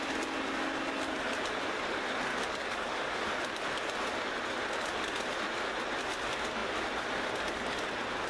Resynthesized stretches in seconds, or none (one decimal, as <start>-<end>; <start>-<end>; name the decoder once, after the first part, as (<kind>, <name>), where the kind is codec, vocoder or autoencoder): 2.3-3.4 (codec, DAC)